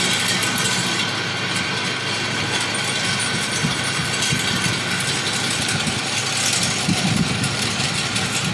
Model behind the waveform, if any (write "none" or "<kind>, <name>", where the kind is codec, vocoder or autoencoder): none